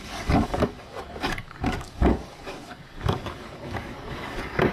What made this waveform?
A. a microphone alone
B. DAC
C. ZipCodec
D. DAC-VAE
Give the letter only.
B